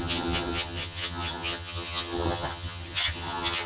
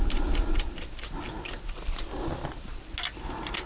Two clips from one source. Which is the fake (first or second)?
first